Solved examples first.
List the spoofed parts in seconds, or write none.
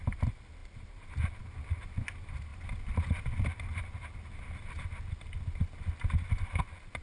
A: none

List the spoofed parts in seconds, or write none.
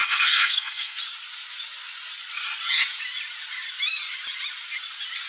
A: 0.0-1.0 (codec, SNAC)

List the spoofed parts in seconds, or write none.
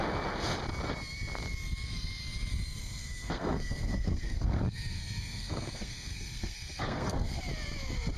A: 2.8-7.4 (codec, SNAC)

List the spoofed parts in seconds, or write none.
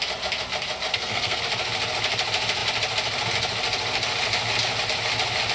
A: 0.9-1.4 (codec, SNAC)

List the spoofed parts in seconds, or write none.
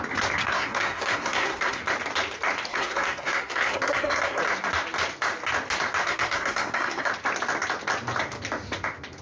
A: 0.4-1.8 (codec, SNAC); 2.7-4.4; 6.0-7.1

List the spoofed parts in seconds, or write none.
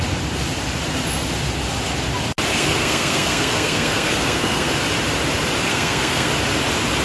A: 2.5-4.7 (codec, SNAC); 5.7-6.3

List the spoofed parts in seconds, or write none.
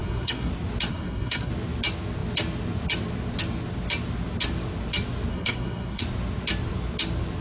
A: 0.0-0.5 (codec, SNAC); 0.9-1.5; 5.3-6.0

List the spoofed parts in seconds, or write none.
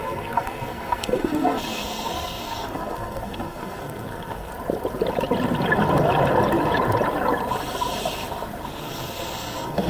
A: 0.0-4.5 (codec, SNAC); 8.8-9.9